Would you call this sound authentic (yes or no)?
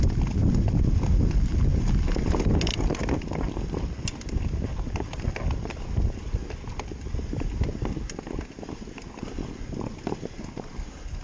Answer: yes